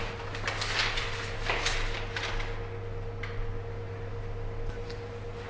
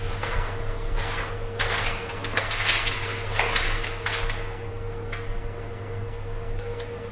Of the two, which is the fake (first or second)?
second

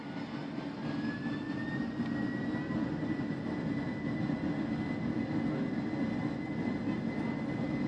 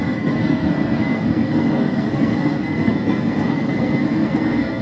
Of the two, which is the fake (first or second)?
second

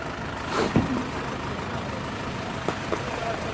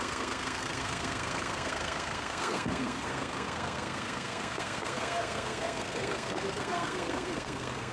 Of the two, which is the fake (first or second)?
second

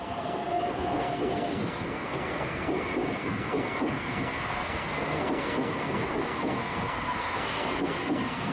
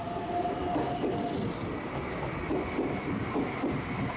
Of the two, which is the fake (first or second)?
first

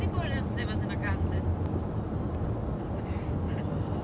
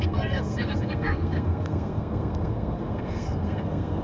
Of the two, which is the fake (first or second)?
second